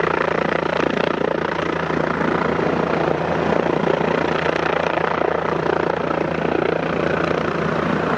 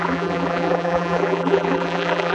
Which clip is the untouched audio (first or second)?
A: first